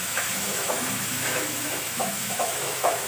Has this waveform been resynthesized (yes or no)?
yes